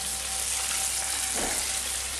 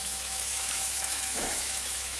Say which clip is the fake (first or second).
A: second